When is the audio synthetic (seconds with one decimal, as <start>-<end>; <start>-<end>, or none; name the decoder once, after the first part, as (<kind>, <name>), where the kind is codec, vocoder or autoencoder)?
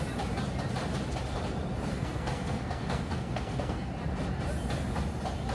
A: 1.9-3.9 (codec, SNAC)